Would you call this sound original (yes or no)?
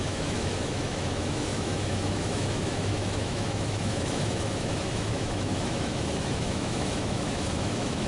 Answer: no